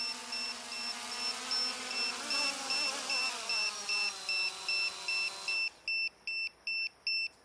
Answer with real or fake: real